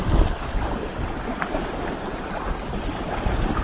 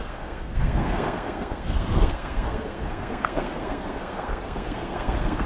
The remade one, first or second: second